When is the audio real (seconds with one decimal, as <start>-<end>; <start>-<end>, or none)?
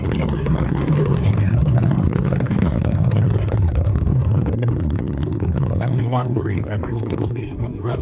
none